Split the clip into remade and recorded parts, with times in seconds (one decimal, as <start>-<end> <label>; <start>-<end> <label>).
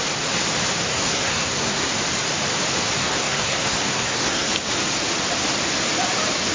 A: 0.0-0.9 recorded; 0.9-1.9 remade; 1.9-3.0 recorded; 3.0-4.5 remade; 4.5-6.5 recorded